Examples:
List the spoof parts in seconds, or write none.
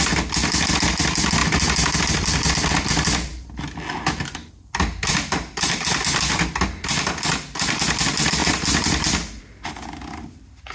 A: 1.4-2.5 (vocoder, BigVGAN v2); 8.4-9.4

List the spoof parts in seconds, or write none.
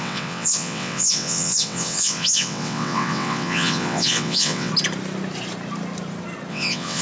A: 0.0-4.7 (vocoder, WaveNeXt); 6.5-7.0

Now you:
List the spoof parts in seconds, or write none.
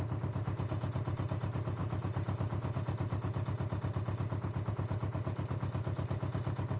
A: none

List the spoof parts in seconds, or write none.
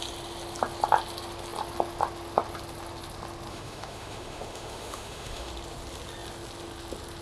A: 3.5-5.5 (autoencoder, DAC-VAE)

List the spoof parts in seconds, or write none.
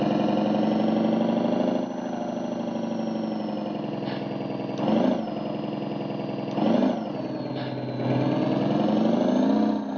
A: none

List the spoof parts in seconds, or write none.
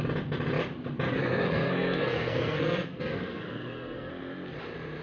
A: 1.1-4.1 (codec, SNAC)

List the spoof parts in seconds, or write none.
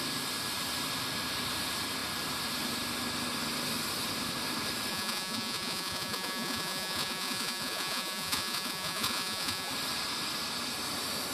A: 4.9-9.7 (vocoder, Vocos)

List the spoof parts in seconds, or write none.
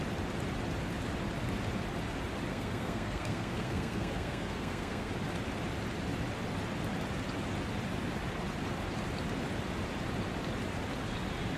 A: 2.5-5.1 (codec, SNAC)